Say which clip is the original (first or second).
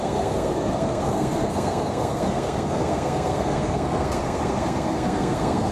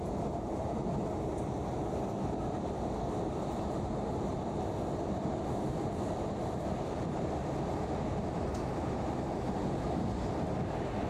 second